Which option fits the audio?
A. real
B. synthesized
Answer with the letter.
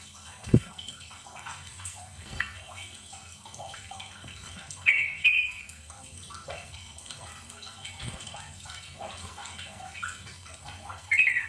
B